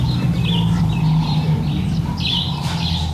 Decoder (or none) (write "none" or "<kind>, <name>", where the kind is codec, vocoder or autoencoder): none